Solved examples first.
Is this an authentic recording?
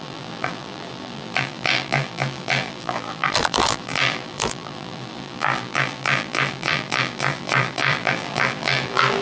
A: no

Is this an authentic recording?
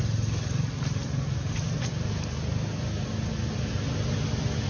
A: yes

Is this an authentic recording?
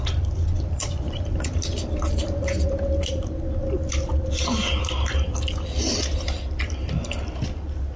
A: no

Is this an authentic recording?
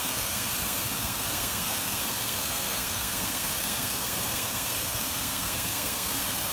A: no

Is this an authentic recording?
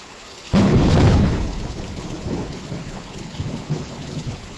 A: no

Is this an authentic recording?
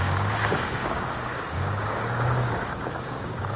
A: no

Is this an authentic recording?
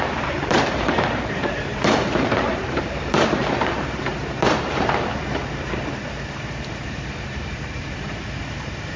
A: no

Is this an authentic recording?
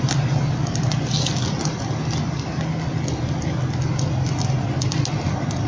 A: yes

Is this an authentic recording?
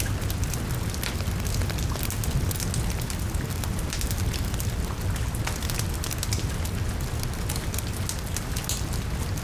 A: yes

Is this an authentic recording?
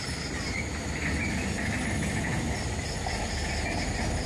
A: yes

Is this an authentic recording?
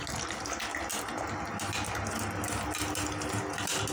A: yes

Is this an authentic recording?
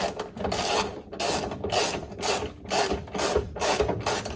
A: yes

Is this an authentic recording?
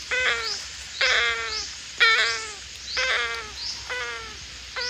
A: yes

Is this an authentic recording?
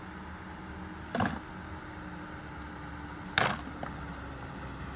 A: yes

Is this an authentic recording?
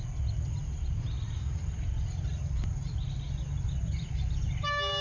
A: yes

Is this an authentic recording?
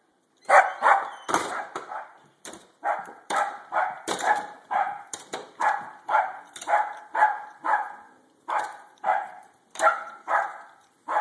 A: no